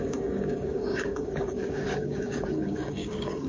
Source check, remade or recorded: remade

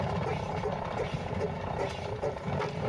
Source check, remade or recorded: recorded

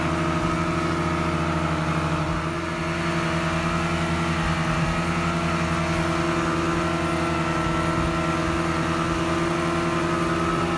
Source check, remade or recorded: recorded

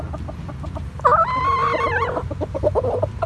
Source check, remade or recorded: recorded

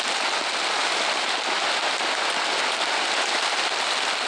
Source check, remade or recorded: recorded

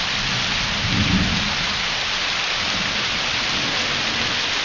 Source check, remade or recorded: recorded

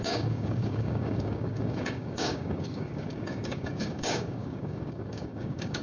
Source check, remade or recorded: remade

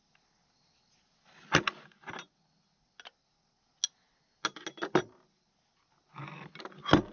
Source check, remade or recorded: recorded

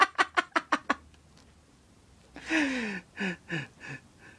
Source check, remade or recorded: recorded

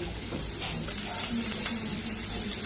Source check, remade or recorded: recorded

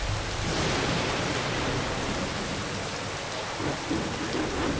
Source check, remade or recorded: recorded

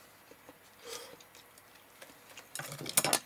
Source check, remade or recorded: recorded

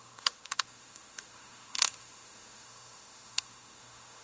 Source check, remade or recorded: remade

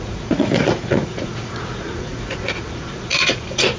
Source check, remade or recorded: remade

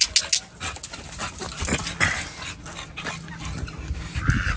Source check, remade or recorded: recorded